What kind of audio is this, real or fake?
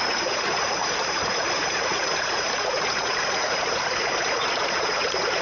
fake